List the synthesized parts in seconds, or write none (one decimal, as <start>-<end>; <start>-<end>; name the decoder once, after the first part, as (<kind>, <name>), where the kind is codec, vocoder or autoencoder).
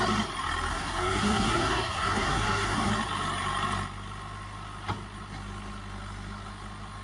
0.7-2.9 (codec, SNAC)